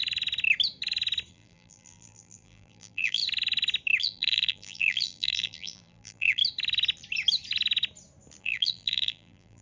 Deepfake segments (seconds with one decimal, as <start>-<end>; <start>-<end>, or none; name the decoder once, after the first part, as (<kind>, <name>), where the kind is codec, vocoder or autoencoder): 1.3-3.2 (vocoder, BigVGAN v2); 4.0-6.4; 8.4-9.6